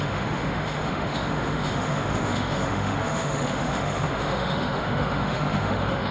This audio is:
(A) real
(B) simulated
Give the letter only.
B